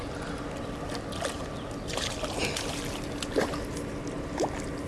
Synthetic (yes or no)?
no